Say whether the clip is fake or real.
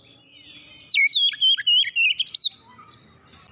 real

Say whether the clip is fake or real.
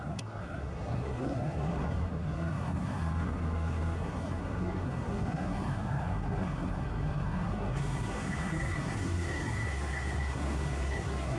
fake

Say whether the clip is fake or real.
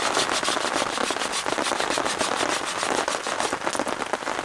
real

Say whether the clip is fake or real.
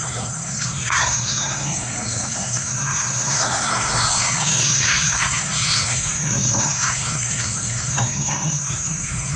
fake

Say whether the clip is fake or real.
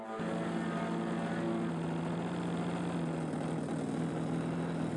real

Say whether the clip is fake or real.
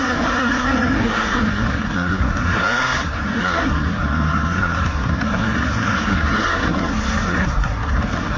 fake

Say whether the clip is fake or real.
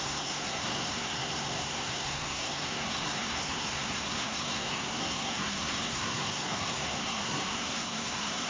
fake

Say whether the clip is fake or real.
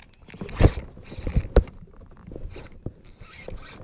real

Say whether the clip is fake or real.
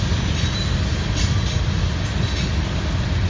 real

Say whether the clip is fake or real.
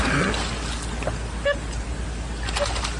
real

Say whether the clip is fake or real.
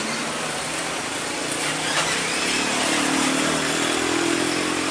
real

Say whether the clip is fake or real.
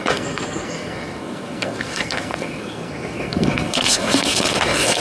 fake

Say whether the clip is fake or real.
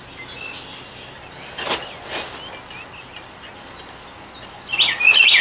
real